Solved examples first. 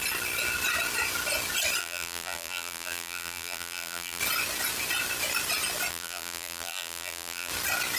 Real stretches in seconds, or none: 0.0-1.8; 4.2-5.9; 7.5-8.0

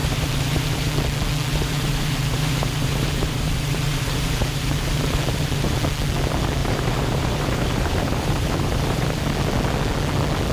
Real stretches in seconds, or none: 0.9-1.5; 5.8-6.6; 9.2-10.5

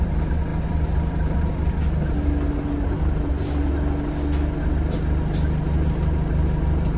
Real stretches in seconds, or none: 0.0-7.0

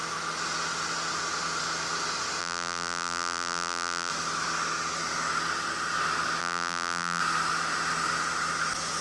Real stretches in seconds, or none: 0.0-2.4; 4.1-6.4; 7.2-9.0

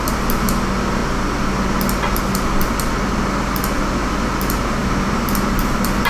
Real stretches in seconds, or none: 0.0-4.8